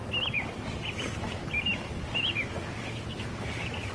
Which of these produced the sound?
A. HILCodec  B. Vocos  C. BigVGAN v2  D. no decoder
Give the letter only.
D